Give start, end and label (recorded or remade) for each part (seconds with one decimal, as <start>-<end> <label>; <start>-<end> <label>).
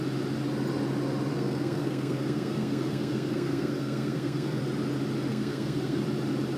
0.0-1.3 recorded; 1.3-4.6 remade; 4.6-5.3 recorded; 5.3-6.0 remade; 6.0-6.6 recorded